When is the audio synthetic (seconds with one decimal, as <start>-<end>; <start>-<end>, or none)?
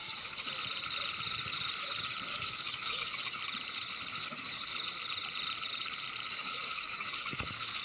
0.0-0.5; 2.3-3.4; 4.1-4.7; 6.3-7.8